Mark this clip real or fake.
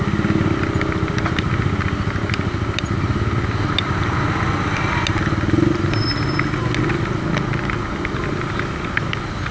real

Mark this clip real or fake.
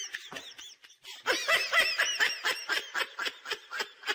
real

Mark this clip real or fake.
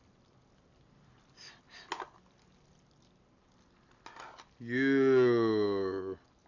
real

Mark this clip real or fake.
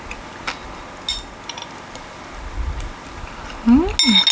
real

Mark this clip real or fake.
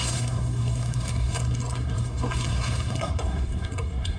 fake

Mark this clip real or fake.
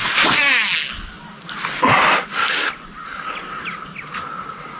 real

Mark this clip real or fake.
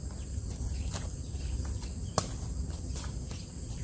real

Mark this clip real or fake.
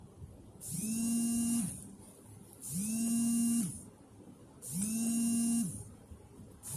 real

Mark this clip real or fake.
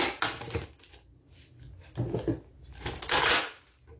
real